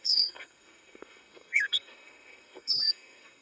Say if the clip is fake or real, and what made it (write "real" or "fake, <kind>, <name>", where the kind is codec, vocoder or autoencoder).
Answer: fake, codec, SNAC